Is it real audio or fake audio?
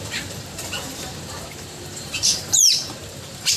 fake